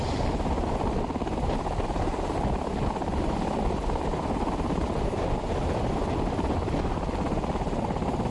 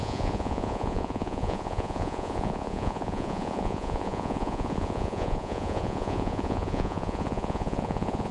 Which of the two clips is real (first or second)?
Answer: first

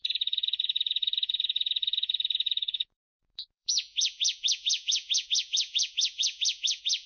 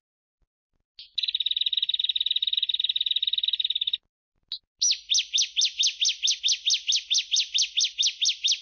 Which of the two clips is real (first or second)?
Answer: second